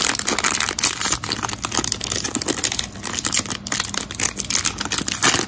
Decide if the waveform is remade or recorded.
recorded